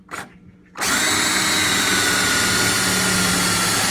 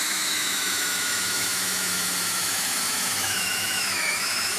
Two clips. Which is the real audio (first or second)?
first